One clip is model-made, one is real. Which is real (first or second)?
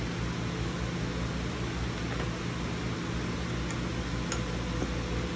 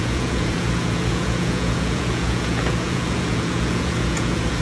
first